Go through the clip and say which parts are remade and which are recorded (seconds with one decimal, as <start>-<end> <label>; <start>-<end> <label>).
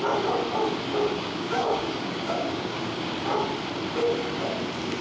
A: 0.0-0.9 recorded; 0.9-3.1 remade; 3.1-5.0 recorded